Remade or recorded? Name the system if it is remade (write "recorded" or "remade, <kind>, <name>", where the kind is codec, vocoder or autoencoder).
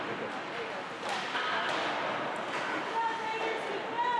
recorded